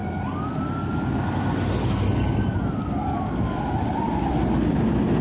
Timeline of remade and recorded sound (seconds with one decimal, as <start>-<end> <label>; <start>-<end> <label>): 0.0-5.2 recorded

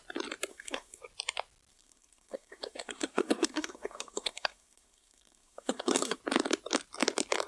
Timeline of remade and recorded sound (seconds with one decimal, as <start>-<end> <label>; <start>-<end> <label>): 0.0-0.5 recorded; 0.5-1.0 remade; 1.0-1.7 recorded; 1.7-6.2 remade; 6.2-7.5 recorded

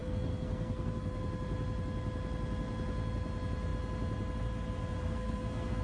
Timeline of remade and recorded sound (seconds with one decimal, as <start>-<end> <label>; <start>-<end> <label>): 0.0-1.2 remade; 1.2-5.0 recorded; 5.0-5.8 remade

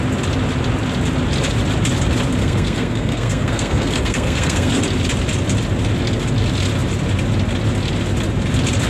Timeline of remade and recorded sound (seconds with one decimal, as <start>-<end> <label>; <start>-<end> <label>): 0.0-2.4 recorded; 2.4-4.8 remade; 4.8-8.9 recorded

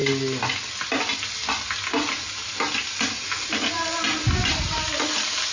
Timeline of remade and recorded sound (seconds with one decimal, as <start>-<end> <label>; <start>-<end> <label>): 0.0-5.5 recorded

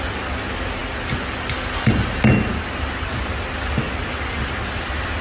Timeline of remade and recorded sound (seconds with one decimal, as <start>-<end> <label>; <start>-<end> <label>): 0.0-5.2 recorded

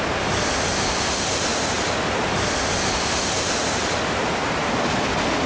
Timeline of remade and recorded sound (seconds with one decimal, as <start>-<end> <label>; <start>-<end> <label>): 0.0-5.5 recorded

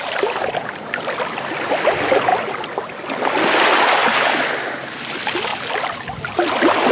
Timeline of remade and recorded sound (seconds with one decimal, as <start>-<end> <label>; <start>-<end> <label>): 0.0-6.9 recorded